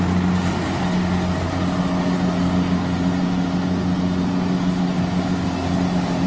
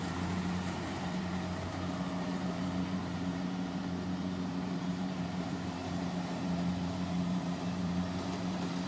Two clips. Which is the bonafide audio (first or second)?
first